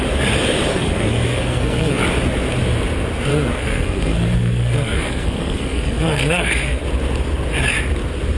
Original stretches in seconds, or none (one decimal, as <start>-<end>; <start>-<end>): 0.0-0.7; 2.0-3.3; 6.8-8.4